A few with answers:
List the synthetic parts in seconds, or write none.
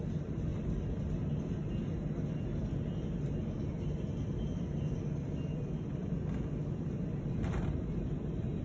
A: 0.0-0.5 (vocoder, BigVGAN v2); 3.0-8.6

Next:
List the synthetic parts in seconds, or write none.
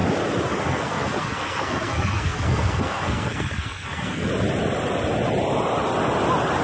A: 0.6-4.3 (codec, SNAC)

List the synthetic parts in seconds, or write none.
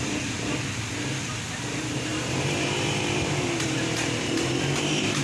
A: 2.1-5.2 (vocoder, BigVGAN v2)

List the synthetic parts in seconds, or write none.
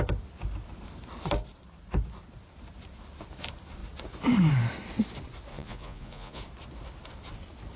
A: 5.5-6.4 (vocoder, Vocos)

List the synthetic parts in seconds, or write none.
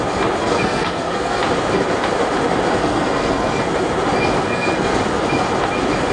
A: 0.4-1.4 (codec, SNAC); 2.8-3.6; 4.4-5.0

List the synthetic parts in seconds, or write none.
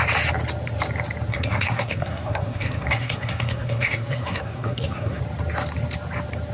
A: 1.3-5.2 (codec, SNAC)